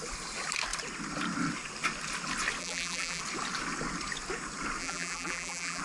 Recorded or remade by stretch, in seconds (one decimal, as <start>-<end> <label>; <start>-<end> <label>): 0.0-2.6 recorded; 2.6-3.2 remade; 3.2-4.8 recorded; 4.8-5.8 remade